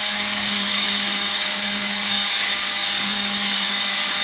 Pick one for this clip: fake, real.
fake